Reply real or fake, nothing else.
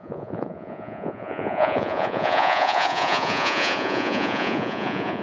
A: fake